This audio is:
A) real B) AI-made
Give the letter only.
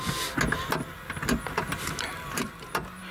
A